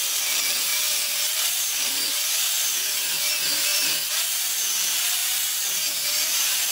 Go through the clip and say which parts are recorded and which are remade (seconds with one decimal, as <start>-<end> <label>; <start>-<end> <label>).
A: 0.0-0.7 recorded; 0.7-3.3 remade; 3.3-3.7 recorded; 3.7-4.2 remade; 4.2-5.2 recorded; 5.2-6.7 remade